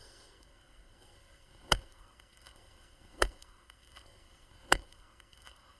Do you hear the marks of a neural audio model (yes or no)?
yes